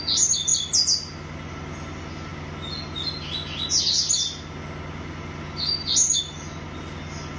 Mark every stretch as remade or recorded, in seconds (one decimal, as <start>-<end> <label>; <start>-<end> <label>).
0.0-7.4 recorded